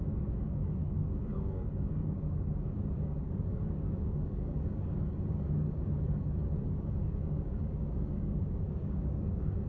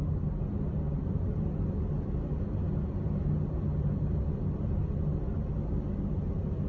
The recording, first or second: second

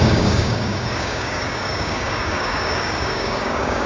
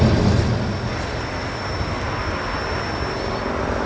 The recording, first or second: second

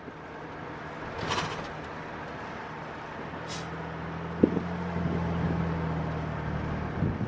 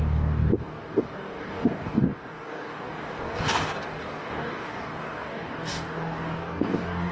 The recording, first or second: first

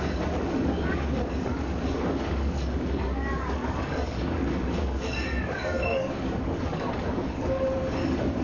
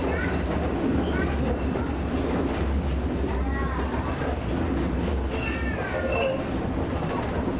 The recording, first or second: second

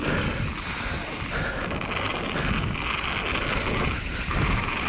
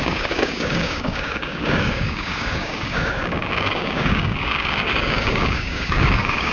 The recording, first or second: first